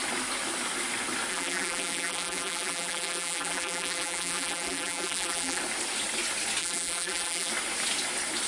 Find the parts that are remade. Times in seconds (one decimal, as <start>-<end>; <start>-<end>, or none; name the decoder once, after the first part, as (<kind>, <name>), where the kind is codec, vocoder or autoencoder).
1.3-5.6 (vocoder, BigVGAN v2); 6.6-7.5